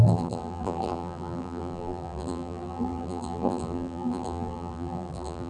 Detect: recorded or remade remade